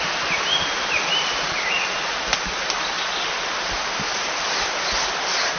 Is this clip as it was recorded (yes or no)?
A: no